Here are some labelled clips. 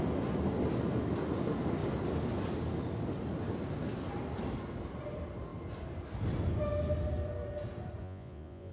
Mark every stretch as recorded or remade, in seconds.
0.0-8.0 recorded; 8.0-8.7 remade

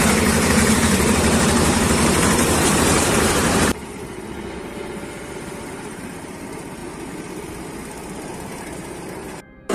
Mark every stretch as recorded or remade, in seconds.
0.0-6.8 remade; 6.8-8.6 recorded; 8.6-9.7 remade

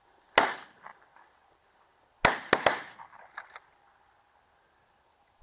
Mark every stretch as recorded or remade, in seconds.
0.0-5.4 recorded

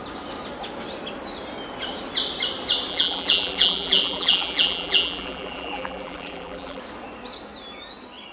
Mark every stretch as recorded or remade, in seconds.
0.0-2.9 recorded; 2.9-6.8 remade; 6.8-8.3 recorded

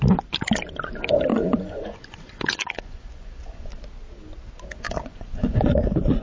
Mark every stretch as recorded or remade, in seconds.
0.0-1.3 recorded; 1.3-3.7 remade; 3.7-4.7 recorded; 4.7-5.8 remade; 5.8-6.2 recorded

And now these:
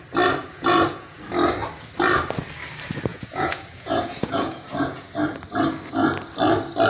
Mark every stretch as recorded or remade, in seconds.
0.0-0.4 recorded; 0.4-1.2 remade; 1.2-3.1 recorded; 3.1-5.1 remade; 5.1-6.9 recorded

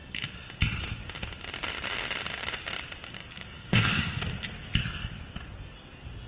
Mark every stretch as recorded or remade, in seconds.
0.0-3.2 recorded; 3.2-4.2 remade; 4.2-6.3 recorded

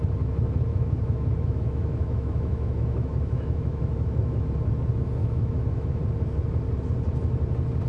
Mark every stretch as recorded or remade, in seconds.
0.0-0.7 recorded; 0.7-4.5 remade; 4.5-5.2 recorded; 5.2-6.0 remade; 6.0-7.9 recorded